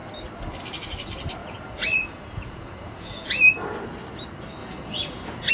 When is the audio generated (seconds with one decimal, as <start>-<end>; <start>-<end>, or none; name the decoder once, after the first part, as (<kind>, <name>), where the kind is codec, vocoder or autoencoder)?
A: 1.4-3.3 (vocoder, Vocos); 4.6-5.5